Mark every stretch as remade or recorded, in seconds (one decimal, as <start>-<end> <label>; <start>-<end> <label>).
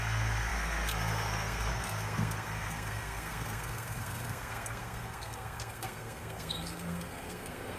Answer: 0.0-7.8 remade